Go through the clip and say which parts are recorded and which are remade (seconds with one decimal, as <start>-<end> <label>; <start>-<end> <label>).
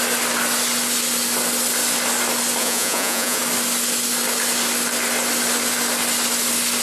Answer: 0.0-2.6 recorded; 2.6-3.4 remade; 3.4-6.8 recorded